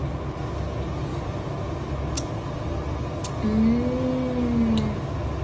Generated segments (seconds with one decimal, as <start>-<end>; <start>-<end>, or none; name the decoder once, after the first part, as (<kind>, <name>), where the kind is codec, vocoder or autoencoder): none